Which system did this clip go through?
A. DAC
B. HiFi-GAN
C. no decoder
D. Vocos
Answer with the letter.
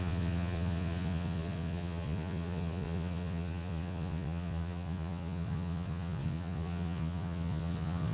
D